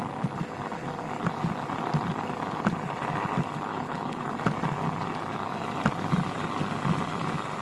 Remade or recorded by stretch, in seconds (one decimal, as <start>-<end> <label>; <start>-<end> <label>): 0.0-3.7 recorded; 3.7-4.3 remade; 4.3-7.6 recorded